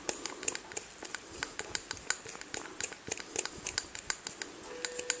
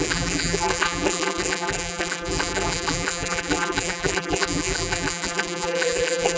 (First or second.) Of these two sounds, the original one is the first